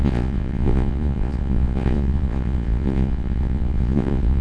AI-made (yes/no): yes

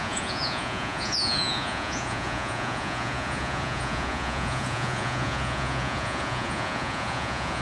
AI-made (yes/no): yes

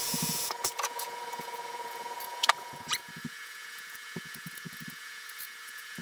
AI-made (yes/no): yes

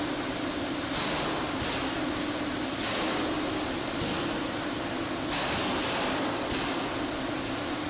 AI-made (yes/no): no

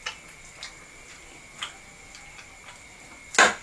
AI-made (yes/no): no